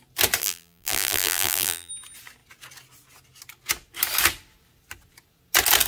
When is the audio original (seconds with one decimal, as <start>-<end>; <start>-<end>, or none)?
0.0-0.4; 1.9-5.9